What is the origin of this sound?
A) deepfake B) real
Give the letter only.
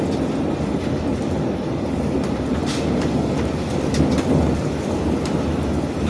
B